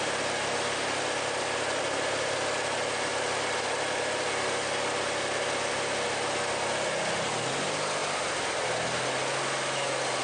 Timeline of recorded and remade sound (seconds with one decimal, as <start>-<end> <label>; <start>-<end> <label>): 0.0-10.2 recorded